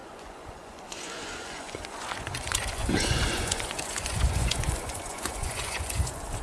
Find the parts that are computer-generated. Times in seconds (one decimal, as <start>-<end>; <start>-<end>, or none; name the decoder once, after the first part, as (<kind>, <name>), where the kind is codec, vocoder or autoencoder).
0.0-6.4 (vocoder, Vocos)